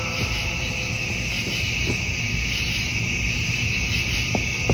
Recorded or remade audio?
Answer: recorded